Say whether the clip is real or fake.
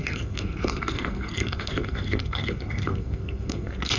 fake